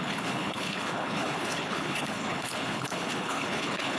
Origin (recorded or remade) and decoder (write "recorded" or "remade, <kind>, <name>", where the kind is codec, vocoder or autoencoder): remade, codec, HILCodec